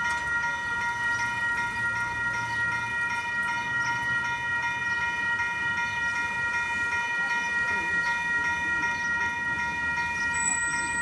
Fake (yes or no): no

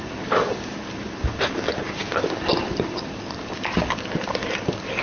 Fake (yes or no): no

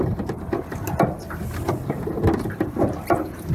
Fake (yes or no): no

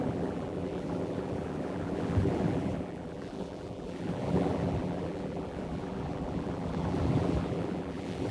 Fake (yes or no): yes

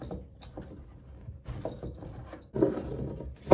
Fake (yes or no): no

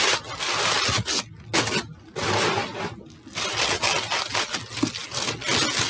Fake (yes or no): no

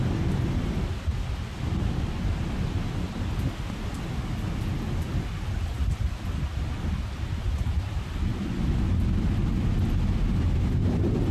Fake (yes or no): no